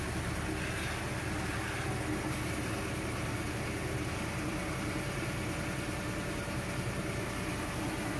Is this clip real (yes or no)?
yes